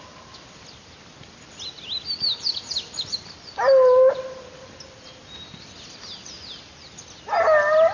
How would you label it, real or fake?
real